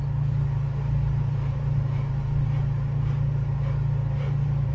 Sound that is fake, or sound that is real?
real